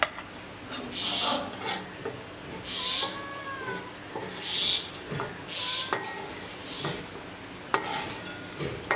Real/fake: real